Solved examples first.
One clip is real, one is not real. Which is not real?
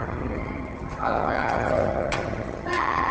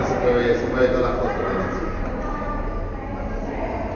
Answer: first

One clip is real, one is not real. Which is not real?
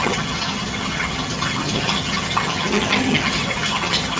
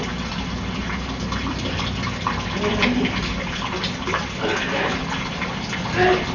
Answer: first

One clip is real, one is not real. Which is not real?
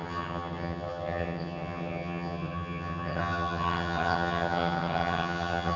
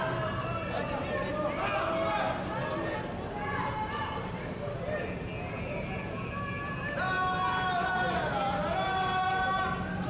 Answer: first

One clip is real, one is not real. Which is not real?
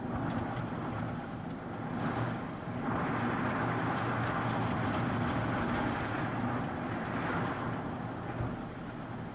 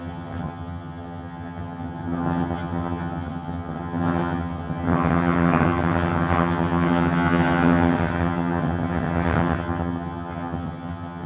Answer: second